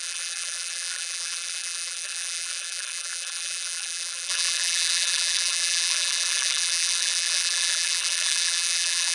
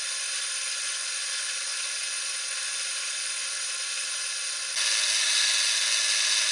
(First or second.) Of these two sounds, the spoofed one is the first